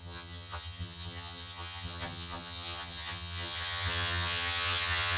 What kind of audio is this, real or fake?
fake